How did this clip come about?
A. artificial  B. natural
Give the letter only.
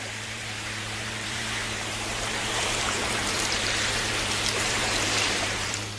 A